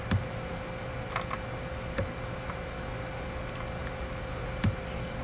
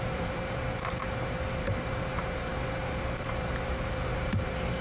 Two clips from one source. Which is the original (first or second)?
first